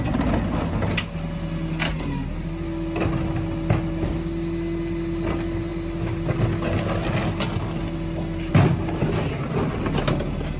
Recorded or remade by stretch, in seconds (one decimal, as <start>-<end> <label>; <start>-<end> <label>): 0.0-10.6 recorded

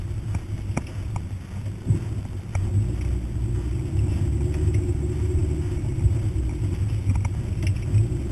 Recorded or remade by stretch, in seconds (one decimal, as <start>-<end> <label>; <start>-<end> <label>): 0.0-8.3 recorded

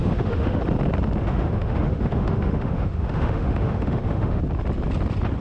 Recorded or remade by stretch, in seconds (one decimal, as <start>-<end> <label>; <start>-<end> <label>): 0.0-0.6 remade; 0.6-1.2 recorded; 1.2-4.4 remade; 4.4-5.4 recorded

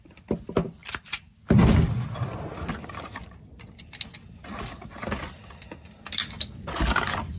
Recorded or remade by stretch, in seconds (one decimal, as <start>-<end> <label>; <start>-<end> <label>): 0.0-7.4 recorded